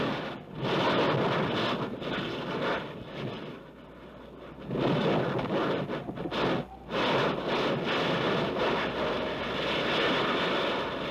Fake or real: real